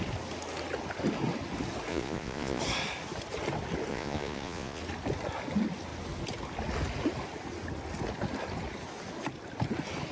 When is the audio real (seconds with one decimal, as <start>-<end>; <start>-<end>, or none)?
0.0-1.9; 2.6-3.9; 4.8-10.1